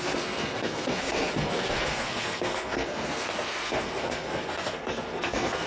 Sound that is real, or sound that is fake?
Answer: fake